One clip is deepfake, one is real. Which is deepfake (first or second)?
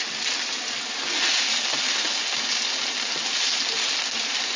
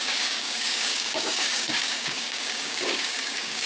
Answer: second